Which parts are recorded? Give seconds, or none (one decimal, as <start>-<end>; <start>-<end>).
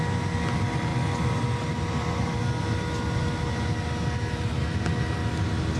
0.0-5.8